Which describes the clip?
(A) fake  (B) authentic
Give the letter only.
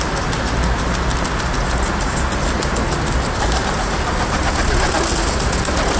B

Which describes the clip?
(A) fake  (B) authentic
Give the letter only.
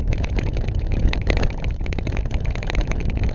A